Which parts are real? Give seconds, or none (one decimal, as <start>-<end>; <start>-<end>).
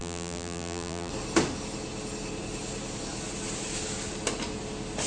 1.1-5.1